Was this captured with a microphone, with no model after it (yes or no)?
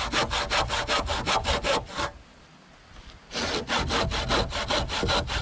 yes